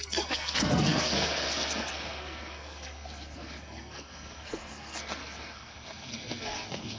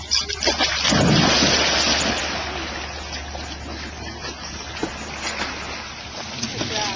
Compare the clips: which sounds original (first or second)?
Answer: second